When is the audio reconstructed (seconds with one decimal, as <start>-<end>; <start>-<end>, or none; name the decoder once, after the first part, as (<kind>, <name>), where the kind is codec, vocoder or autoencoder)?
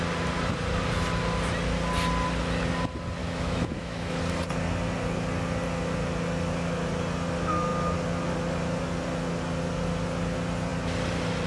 3.2-4.2 (autoencoder, DAC-VAE)